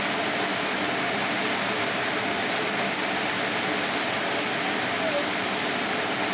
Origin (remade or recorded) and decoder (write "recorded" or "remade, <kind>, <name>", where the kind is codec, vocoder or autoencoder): recorded